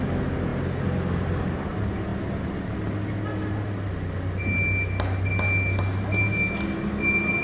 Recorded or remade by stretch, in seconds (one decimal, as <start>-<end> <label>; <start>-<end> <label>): 0.0-7.4 recorded